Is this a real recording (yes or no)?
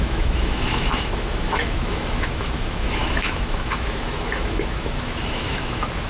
no